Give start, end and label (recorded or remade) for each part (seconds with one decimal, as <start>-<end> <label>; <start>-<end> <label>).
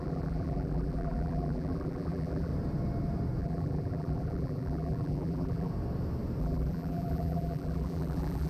0.0-2.5 remade; 2.5-3.4 recorded; 3.4-5.7 remade; 5.7-6.4 recorded; 6.4-8.5 remade